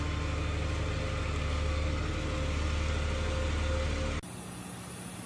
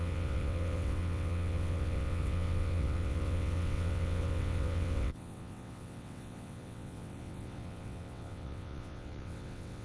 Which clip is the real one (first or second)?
first